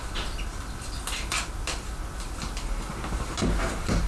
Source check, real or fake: real